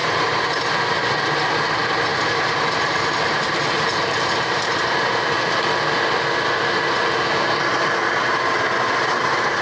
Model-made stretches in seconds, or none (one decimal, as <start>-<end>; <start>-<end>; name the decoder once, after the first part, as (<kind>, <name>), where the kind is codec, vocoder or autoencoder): 0.0-0.7 (vocoder, BigVGAN v2); 2.1-5.2